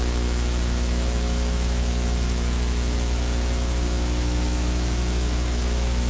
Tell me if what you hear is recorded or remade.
remade